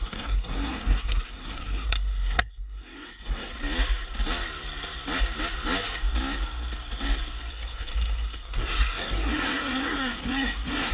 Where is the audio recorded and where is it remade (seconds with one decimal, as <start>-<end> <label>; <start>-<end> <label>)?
0.0-3.5 remade; 3.5-7.5 recorded; 7.5-10.9 remade